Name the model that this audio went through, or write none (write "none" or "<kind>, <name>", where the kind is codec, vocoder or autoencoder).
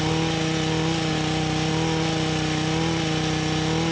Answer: none